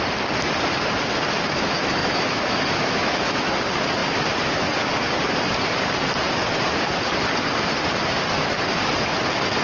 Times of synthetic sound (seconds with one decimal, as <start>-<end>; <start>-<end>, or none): 2.0-3.6